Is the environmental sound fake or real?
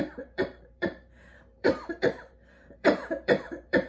fake